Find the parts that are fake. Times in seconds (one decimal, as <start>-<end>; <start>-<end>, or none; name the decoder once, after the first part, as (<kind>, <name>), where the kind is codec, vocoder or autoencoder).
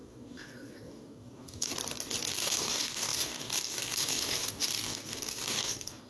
0.0-1.7 (codec, DAC); 2.3-6.1